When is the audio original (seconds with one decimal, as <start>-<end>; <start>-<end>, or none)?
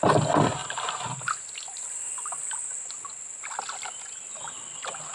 0.0-5.1